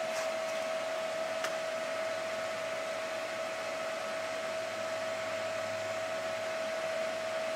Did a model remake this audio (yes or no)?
no